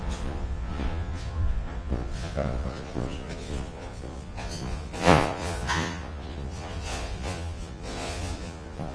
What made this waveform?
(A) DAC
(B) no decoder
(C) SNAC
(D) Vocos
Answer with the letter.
D